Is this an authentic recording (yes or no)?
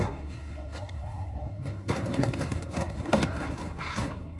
no